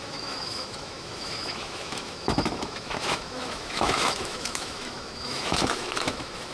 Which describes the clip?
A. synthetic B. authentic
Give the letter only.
A